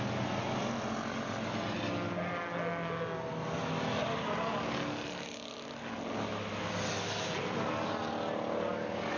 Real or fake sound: real